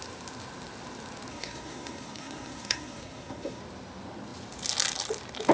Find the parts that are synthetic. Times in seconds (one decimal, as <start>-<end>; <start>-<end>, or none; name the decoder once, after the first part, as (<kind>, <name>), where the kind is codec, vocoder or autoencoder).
1.3-3.6 (codec, SNAC)